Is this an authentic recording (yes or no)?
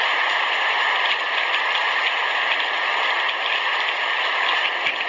yes